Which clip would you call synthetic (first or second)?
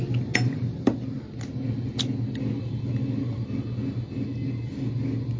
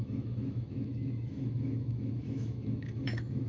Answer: second